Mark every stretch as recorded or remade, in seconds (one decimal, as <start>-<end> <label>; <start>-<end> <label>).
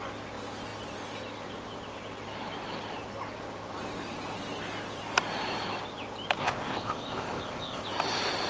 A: 0.0-6.4 recorded; 6.4-7.8 remade; 7.8-8.5 recorded